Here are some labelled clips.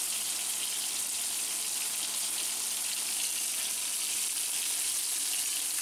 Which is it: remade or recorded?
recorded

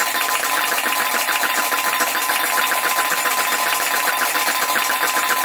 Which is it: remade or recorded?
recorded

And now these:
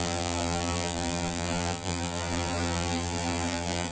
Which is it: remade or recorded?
remade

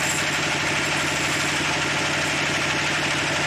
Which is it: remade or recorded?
recorded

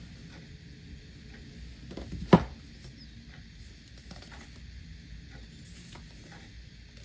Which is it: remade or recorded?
recorded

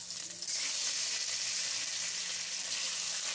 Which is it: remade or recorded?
recorded